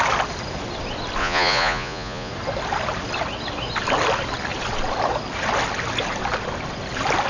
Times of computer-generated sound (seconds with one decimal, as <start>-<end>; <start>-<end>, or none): 1.2-2.3